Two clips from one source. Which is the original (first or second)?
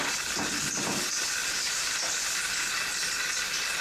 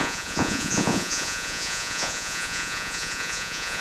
first